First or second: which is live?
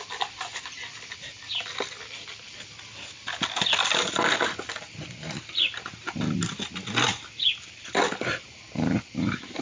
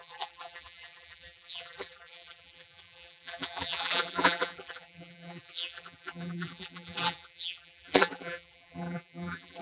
first